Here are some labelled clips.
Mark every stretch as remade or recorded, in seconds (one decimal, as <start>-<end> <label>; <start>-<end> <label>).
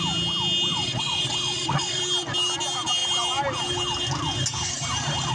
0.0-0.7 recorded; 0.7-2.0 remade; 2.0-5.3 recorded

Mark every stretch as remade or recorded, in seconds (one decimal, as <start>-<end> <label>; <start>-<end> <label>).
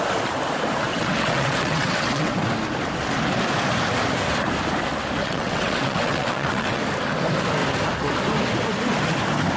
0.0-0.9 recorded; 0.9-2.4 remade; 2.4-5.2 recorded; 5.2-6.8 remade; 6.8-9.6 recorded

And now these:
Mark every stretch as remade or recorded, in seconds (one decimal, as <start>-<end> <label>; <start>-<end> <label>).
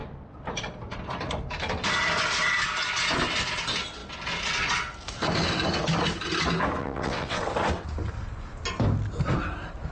0.0-6.8 recorded; 6.8-7.4 remade; 7.4-9.9 recorded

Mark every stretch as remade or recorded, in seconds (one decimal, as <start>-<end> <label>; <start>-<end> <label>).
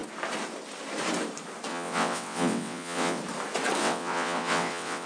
0.0-1.7 recorded; 1.7-3.2 remade; 3.2-3.8 recorded; 3.8-5.1 remade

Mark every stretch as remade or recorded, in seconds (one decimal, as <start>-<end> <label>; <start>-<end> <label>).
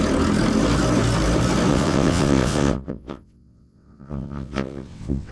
0.0-1.7 recorded; 1.7-5.3 remade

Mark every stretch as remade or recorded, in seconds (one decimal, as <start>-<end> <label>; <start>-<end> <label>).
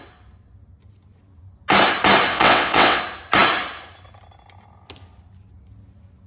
0.0-2.3 recorded; 2.3-3.0 remade; 3.0-6.3 recorded